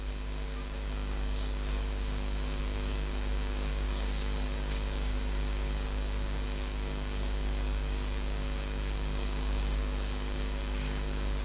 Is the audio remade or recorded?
remade